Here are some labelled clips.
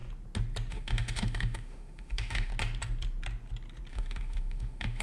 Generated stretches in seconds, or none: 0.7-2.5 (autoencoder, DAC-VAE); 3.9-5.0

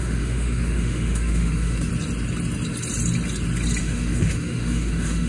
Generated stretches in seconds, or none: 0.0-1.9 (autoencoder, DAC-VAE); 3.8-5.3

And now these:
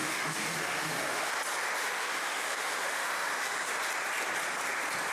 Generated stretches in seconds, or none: 0.0-1.3 (autoencoder, DAC-VAE); 1.8-3.7

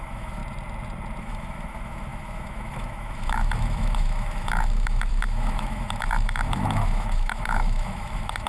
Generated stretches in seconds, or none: 0.0-0.4 (autoencoder, DAC-VAE); 1.2-8.5

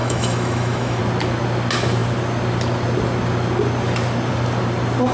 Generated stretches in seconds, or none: 0.0-1.0 (autoencoder, DAC-VAE)